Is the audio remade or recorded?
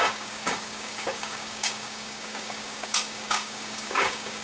remade